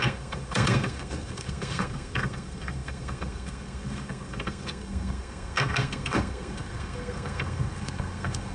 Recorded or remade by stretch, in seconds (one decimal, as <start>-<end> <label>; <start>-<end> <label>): 0.0-8.5 remade